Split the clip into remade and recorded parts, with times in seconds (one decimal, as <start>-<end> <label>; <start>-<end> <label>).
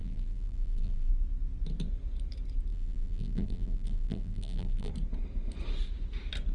0.0-1.1 remade; 1.1-2.7 recorded; 2.7-4.9 remade; 4.9-6.5 recorded